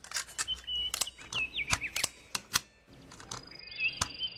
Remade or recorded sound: recorded